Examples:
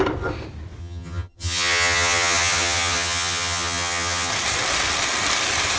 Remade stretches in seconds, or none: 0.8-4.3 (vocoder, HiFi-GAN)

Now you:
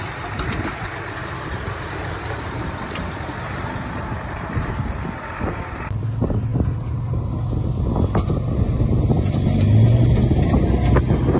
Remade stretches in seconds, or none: 1.2-5.2 (vocoder, BigVGAN v2)